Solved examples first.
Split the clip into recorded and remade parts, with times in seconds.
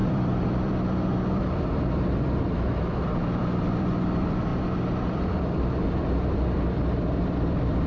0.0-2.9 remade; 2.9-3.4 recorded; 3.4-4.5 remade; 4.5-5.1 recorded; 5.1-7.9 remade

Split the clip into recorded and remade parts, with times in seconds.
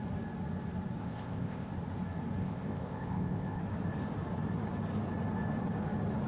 0.0-1.0 recorded; 1.0-1.7 remade; 1.7-2.4 recorded; 2.4-3.6 remade; 3.6-6.3 recorded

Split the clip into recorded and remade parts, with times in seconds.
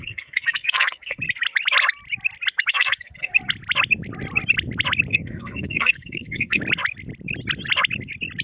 0.0-1.2 remade; 1.2-2.7 recorded; 2.7-3.3 remade; 3.3-5.1 recorded; 5.1-6.6 remade; 6.6-8.4 recorded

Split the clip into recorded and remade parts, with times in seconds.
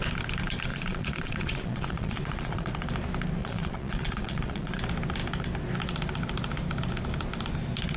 0.0-0.7 recorded; 0.7-2.7 remade; 2.7-3.4 recorded; 3.4-4.8 remade; 4.8-8.0 recorded